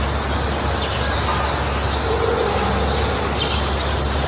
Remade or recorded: recorded